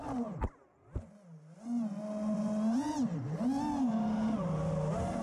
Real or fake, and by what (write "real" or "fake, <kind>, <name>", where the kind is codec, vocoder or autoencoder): real